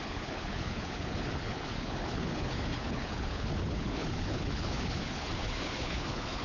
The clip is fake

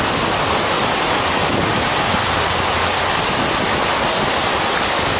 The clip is real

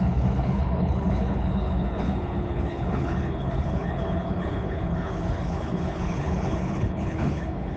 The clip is fake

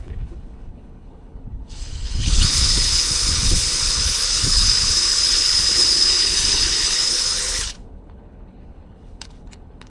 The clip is fake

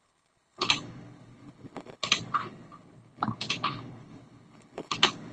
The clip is fake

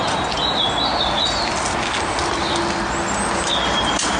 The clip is real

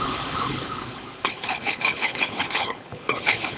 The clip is fake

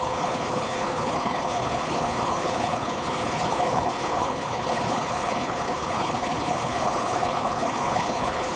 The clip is fake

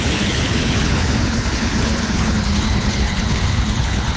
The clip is fake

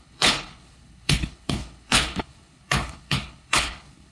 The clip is fake